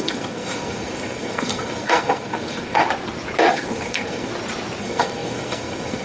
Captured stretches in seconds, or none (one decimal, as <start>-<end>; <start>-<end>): 2.8-3.5; 4.3-4.8